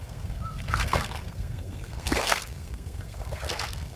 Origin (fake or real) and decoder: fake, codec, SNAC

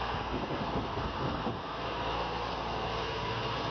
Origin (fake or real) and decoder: fake, codec, SNAC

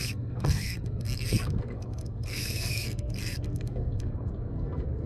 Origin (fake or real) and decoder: fake, codec, SNAC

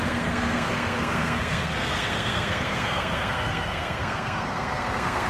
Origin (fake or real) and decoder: fake, codec, SNAC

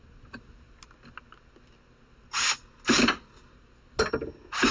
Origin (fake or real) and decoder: real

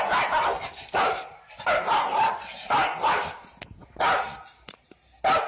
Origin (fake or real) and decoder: real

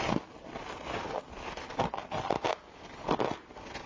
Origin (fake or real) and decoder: real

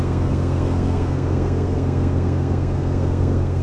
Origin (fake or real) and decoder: fake, codec, SNAC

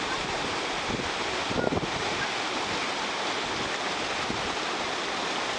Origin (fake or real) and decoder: real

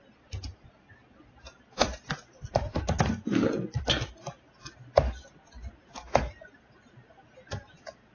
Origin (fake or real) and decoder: real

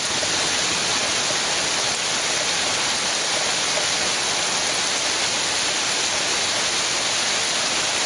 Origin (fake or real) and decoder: real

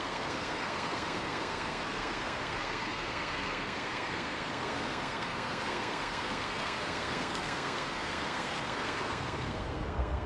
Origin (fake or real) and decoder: fake, codec, SNAC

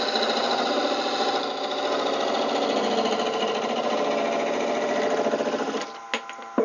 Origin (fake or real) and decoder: real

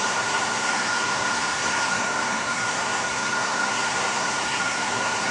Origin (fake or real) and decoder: fake, codec, SNAC